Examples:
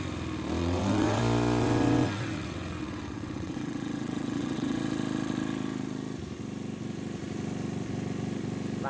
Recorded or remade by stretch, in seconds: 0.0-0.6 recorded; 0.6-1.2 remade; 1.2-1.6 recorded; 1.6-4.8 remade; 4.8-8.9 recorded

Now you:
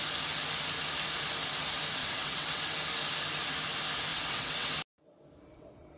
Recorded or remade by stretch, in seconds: 0.0-2.0 recorded; 2.0-2.6 remade; 2.6-4.1 recorded; 4.1-4.7 remade; 4.7-5.5 recorded; 5.5-6.0 remade

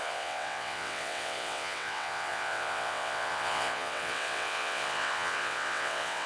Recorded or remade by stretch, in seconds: 0.0-6.3 remade

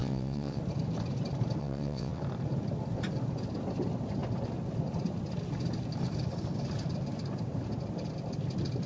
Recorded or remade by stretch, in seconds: 0.0-0.6 remade; 0.6-1.6 recorded; 1.6-2.2 remade; 2.2-8.9 recorded

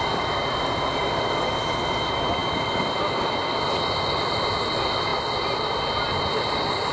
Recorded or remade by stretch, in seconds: 0.0-6.9 recorded

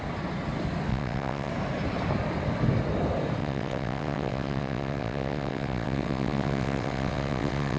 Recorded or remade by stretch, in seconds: 0.0-0.9 recorded; 0.9-1.5 remade; 1.5-3.4 recorded; 3.4-7.8 remade